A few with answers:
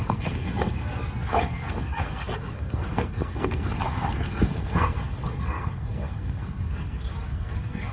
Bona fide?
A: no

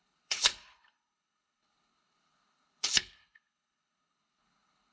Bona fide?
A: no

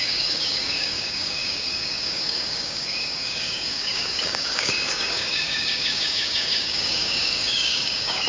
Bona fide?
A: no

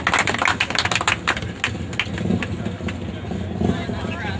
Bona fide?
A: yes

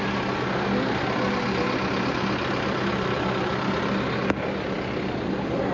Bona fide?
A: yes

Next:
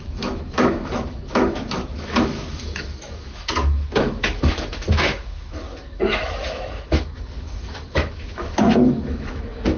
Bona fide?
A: no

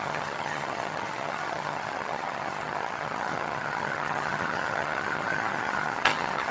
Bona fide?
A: no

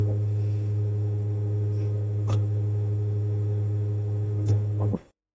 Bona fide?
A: no